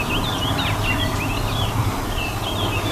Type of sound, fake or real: real